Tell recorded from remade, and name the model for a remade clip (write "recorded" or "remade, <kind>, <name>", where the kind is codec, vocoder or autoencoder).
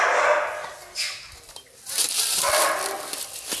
recorded